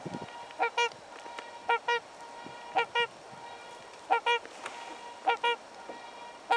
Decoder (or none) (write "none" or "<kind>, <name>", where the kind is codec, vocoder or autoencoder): none